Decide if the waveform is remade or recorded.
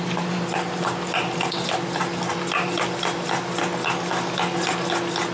recorded